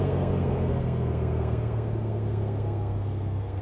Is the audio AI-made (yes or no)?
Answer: yes